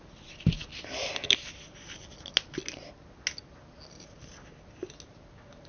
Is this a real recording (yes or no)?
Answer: yes